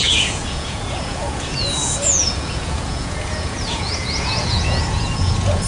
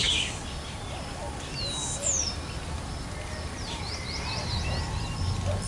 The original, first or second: second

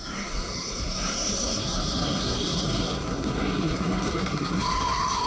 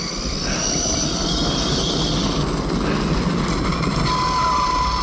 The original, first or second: second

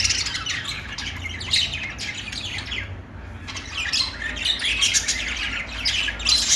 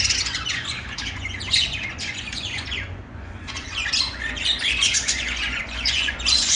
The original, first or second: first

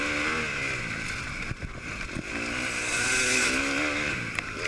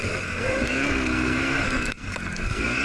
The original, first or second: first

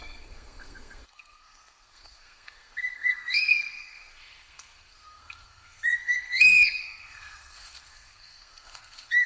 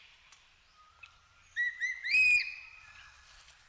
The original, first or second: second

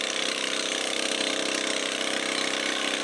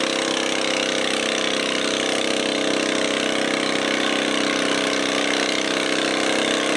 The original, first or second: second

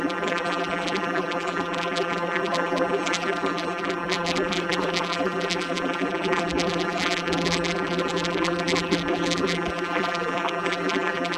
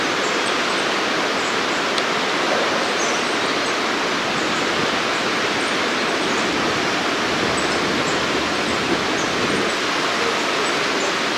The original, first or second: second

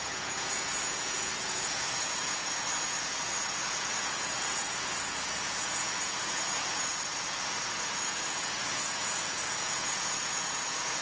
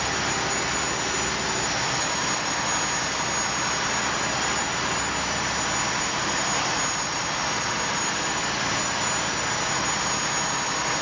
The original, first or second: second